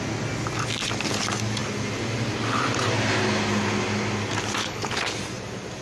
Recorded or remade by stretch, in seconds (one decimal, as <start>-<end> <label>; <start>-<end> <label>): 0.0-4.6 recorded; 4.6-5.1 remade; 5.1-5.8 recorded